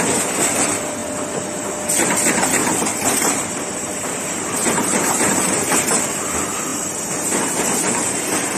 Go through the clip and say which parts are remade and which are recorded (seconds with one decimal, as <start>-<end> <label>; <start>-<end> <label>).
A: 0.0-2.6 recorded; 2.6-6.0 remade; 6.0-8.6 recorded